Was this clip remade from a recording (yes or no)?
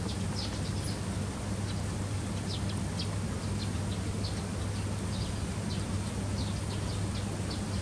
no